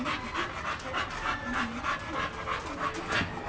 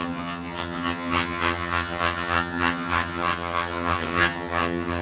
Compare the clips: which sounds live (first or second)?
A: first